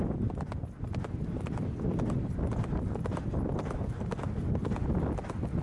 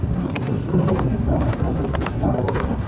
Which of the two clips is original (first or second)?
first